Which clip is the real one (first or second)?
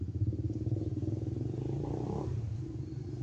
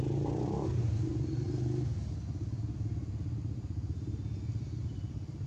second